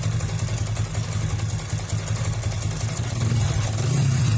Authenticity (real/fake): real